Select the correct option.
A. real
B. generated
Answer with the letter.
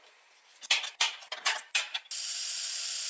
A